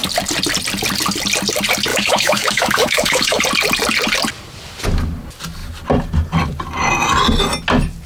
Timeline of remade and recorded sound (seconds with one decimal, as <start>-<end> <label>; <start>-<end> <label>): 0.0-1.9 recorded; 1.9-3.4 remade; 3.4-8.1 recorded